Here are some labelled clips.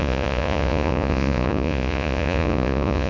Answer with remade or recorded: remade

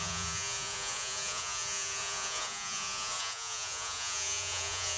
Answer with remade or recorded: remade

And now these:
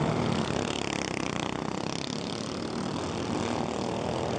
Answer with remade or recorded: recorded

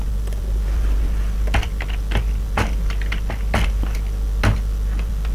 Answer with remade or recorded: recorded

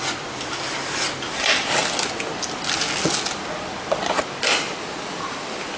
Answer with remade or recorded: recorded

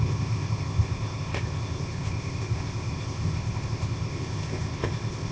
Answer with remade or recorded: remade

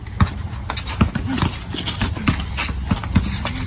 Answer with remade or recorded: recorded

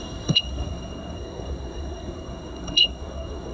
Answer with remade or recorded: remade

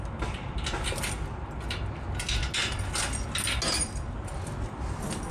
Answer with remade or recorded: recorded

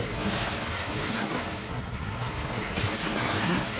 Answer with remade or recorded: remade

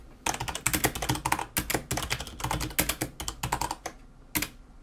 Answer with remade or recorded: recorded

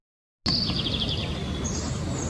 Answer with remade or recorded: recorded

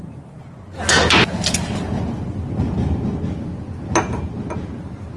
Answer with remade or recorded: recorded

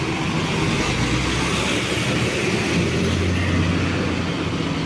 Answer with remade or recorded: recorded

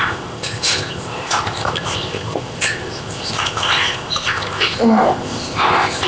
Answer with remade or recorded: remade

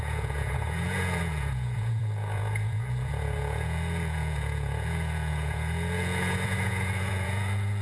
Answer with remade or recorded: remade